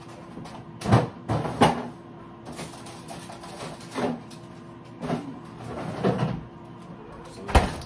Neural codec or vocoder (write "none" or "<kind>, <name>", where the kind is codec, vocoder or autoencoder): none